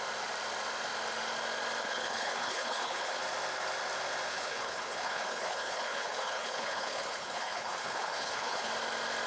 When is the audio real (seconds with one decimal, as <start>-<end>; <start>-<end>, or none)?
0.0-1.8; 3.2-4.3; 8.7-9.3